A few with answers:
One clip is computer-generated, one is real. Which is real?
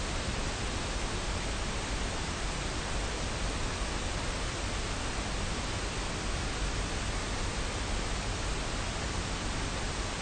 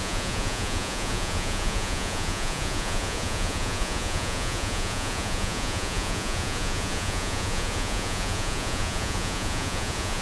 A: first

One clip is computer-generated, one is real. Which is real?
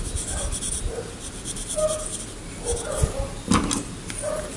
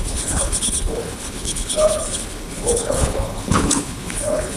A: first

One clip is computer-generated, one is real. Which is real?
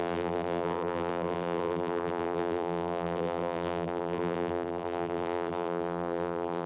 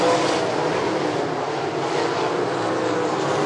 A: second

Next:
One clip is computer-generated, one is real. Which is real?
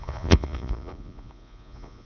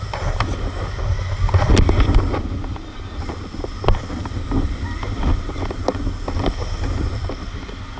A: second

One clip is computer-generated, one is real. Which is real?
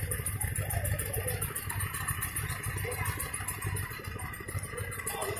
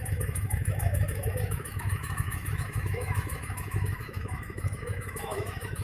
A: first